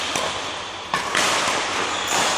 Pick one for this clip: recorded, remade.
recorded